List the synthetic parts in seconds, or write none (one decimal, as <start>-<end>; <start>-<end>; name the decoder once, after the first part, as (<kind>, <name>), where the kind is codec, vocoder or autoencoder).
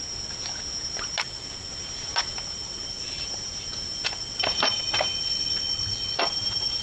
none